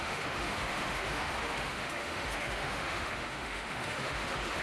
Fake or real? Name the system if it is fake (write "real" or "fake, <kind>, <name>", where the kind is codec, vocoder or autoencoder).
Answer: fake, autoencoder, DAC-VAE